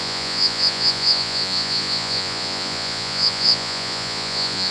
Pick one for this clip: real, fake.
fake